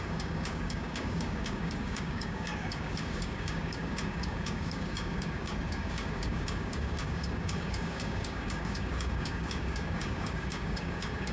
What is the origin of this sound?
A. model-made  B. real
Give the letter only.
A